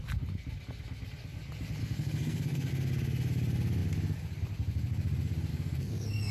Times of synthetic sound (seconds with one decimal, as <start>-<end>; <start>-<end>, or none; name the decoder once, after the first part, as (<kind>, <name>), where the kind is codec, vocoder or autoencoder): 1.8-2.7 (codec, SNAC); 5.5-6.3